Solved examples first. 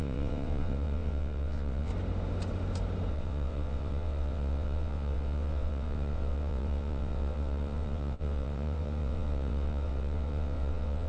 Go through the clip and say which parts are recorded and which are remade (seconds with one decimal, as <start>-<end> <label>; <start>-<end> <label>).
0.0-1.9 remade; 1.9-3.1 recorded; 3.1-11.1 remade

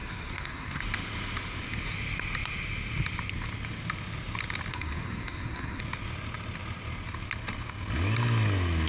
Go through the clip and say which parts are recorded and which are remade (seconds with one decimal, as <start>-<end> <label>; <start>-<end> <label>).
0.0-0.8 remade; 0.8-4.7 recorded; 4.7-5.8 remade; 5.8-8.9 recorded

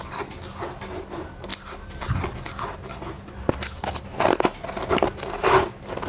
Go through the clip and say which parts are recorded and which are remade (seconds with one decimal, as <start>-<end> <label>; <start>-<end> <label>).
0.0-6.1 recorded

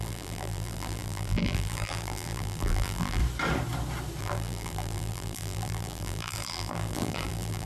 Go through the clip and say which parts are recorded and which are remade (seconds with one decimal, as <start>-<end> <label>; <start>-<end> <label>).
0.0-3.2 remade; 3.2-4.2 recorded; 4.2-7.7 remade

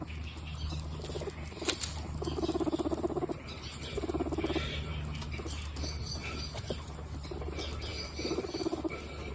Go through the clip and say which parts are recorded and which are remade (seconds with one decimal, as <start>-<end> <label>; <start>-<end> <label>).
0.0-9.3 recorded

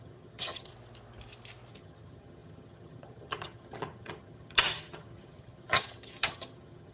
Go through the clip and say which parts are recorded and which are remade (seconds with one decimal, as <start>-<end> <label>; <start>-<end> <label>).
0.0-0.7 remade; 0.7-1.7 recorded; 1.7-6.9 remade